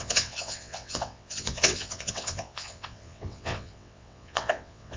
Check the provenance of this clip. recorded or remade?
remade